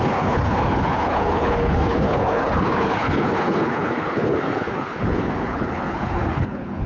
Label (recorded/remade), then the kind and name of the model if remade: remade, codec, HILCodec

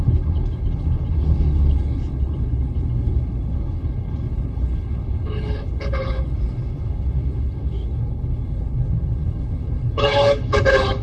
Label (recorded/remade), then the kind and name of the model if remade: remade, codec, HILCodec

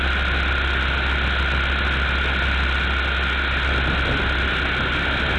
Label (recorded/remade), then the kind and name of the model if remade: recorded